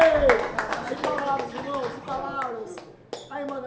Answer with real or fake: real